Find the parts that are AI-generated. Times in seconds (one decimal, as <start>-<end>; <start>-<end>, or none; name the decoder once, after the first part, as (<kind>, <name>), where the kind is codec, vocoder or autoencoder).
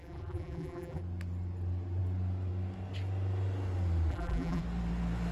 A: 0.0-1.0 (vocoder, BigVGAN v2); 4.1-4.6